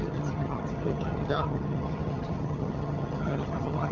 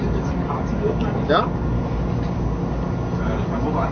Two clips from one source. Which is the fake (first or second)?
first